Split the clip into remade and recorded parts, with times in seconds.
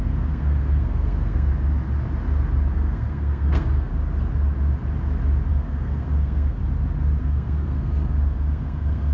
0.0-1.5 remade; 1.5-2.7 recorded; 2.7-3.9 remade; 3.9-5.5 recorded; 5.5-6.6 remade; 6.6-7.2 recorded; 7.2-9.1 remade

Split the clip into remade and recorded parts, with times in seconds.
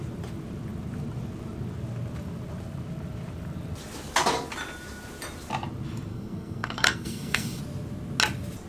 0.0-6.1 recorded; 6.1-7.6 remade; 7.6-8.7 recorded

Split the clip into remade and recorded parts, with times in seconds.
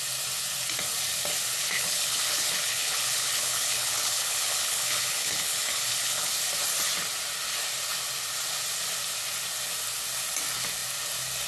0.0-1.6 recorded; 1.6-6.3 remade; 6.3-11.5 recorded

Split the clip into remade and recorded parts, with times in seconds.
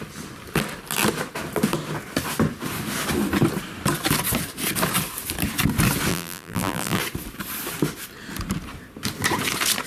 0.0-6.1 recorded; 6.1-7.0 remade; 7.0-9.9 recorded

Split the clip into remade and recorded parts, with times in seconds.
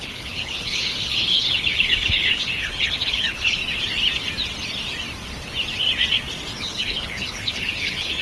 0.0-3.6 remade; 3.6-6.6 recorded; 6.6-8.2 remade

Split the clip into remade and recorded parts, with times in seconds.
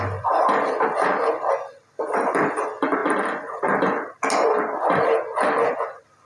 0.0-6.3 recorded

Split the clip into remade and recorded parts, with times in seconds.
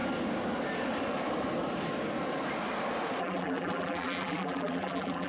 0.0-3.2 recorded; 3.2-5.3 remade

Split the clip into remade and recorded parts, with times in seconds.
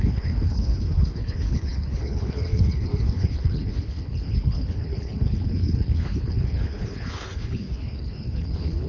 0.0-8.9 remade